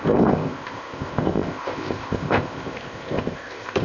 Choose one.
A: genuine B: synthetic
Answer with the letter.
B